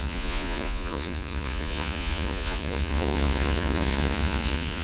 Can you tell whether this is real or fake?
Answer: fake